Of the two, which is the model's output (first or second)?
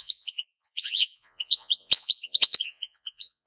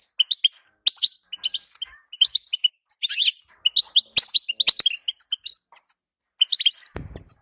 first